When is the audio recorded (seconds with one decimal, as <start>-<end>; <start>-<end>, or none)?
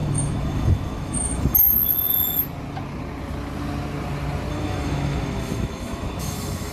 1.7-4.5